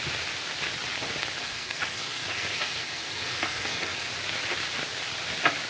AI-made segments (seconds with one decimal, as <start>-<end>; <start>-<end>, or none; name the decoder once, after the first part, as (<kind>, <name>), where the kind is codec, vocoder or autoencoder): 1.4-4.1 (codec, SNAC)

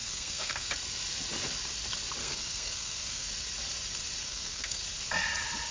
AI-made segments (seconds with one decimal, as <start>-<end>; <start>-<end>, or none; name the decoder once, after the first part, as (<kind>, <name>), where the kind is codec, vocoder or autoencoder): 0.0-0.7 (codec, SNAC); 2.2-3.3; 4.2-4.8